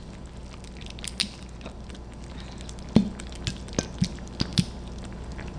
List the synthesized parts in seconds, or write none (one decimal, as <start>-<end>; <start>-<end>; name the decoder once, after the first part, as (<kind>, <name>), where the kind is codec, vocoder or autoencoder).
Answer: none